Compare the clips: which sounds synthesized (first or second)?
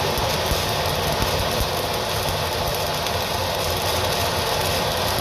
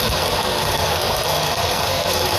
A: second